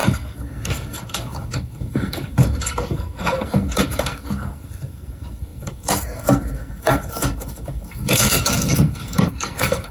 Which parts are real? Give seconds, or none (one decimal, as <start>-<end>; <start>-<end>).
none